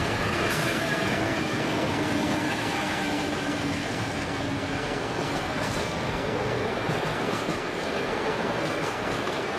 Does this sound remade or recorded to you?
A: remade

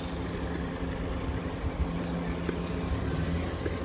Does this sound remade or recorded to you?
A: recorded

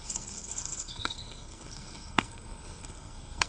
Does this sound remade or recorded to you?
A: remade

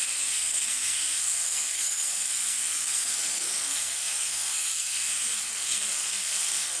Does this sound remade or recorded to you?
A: remade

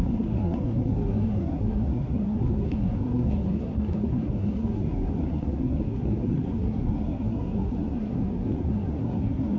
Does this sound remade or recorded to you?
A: remade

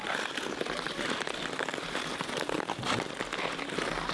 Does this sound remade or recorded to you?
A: recorded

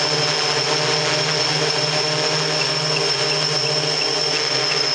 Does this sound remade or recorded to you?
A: recorded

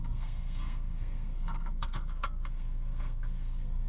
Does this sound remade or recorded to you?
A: remade